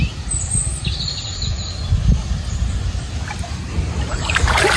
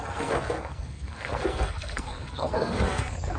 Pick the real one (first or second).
first